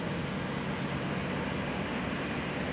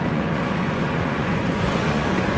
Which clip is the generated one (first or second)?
second